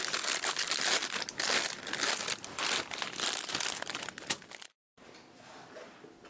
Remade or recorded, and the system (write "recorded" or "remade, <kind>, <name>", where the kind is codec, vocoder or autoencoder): recorded